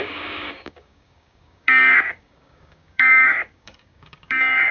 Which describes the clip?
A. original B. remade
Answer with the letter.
B